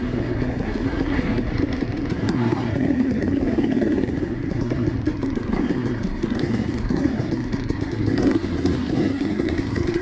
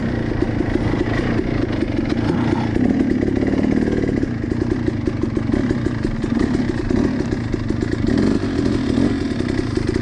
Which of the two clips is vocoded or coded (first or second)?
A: first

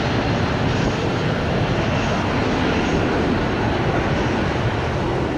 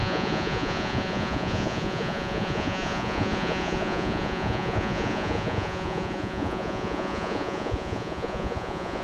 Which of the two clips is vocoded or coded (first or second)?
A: second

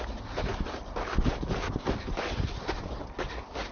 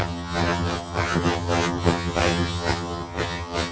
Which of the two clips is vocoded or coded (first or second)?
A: second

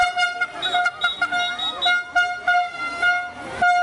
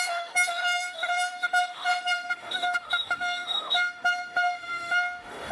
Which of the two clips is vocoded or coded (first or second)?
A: second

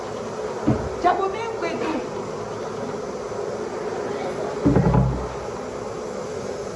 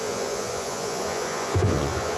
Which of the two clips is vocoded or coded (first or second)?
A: second